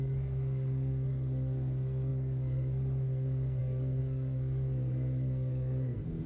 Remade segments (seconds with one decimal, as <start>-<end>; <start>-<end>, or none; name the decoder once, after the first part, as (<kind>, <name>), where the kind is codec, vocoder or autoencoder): 0.0-6.3 (codec, SNAC)